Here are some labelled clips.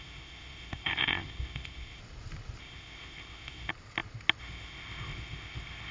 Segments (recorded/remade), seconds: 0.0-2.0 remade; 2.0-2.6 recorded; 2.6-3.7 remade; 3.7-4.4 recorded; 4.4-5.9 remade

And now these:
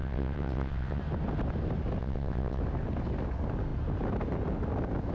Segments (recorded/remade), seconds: 0.0-1.0 remade; 1.0-2.0 recorded; 2.0-2.6 remade; 2.6-5.1 recorded

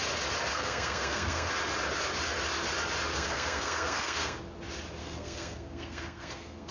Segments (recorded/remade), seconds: 0.0-0.5 recorded; 0.5-1.5 remade; 1.5-3.1 recorded; 3.1-4.4 remade; 4.4-5.0 recorded; 5.0-6.7 remade

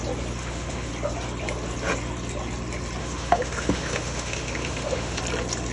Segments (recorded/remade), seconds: 0.0-0.4 recorded; 0.4-0.9 remade; 0.9-3.0 recorded; 3.0-5.2 remade; 5.2-5.7 recorded

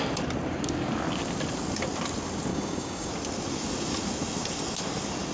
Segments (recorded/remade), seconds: 0.0-2.5 recorded; 2.5-3.1 remade; 3.1-5.3 recorded

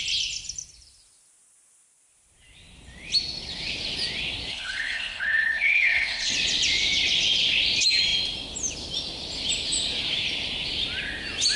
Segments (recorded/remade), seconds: 0.0-4.5 recorded; 4.5-6.3 remade; 6.3-11.6 recorded

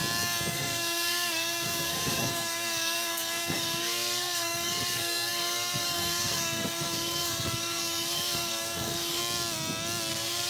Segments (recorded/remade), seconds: 0.0-0.5 recorded; 0.5-9.2 remade; 9.2-10.1 recorded; 10.1-10.5 remade

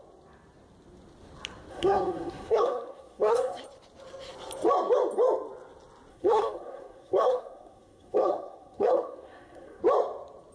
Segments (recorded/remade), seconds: 0.0-1.7 recorded; 1.7-3.6 remade; 3.6-6.1 recorded; 6.1-9.8 remade; 9.8-10.5 recorded